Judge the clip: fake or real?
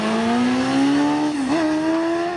real